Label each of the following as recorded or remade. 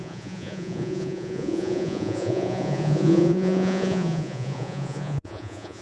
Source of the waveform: remade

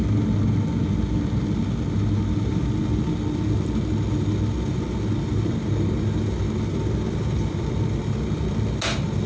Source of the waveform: recorded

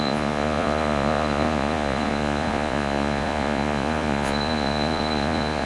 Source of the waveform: remade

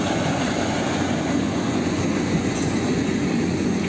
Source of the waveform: remade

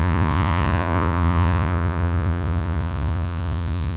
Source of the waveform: remade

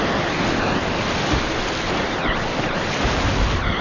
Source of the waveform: recorded